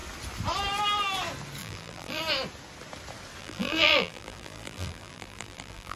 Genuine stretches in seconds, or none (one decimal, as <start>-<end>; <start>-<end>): 0.0-1.6; 2.2-3.4